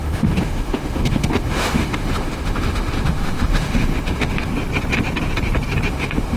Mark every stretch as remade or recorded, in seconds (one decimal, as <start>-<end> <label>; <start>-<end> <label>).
0.0-4.5 remade; 4.5-5.9 recorded; 5.9-6.4 remade